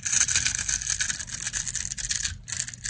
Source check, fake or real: real